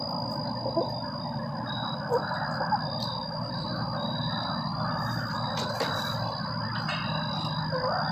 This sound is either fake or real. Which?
real